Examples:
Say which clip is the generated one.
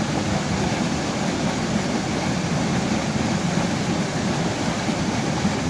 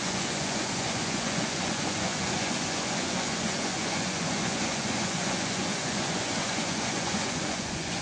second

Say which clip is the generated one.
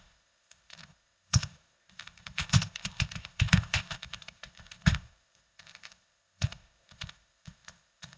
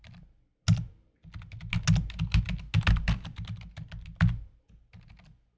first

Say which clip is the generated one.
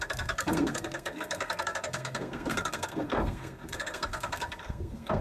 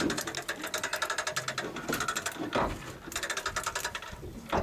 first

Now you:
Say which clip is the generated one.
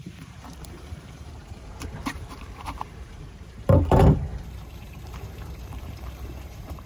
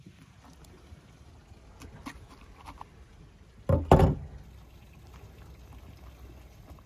first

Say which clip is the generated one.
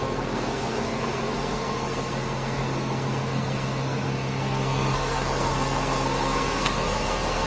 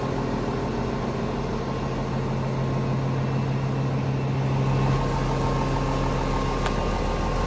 first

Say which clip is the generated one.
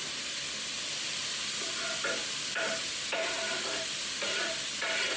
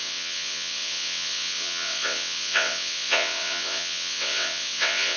second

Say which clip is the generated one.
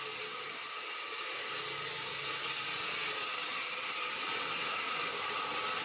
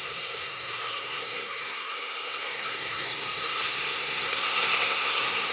second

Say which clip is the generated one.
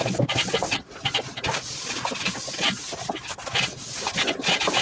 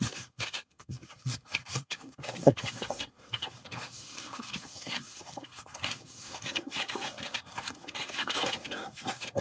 second